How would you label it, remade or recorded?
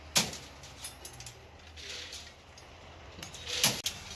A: recorded